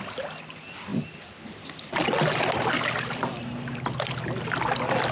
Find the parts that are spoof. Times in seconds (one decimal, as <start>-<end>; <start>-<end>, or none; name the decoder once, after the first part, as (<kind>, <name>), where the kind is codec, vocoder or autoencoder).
none